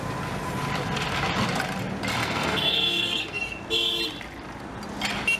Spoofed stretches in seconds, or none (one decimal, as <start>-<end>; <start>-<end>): 2.2-3.4